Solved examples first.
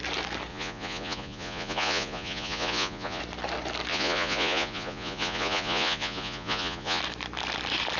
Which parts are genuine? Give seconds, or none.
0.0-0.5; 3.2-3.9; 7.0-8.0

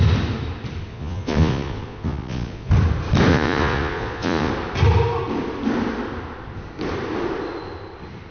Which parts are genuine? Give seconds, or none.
0.0-0.9; 2.7-3.3; 4.5-8.3

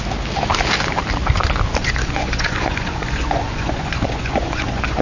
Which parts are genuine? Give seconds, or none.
0.0-1.8

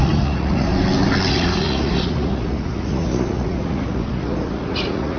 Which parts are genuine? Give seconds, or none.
0.7-1.3